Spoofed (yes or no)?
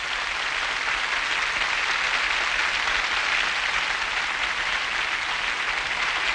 no